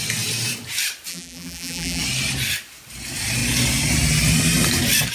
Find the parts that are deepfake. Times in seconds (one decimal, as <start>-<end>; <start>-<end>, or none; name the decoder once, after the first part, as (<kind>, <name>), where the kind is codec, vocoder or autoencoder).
1.1-2.0 (vocoder, BigVGAN v2)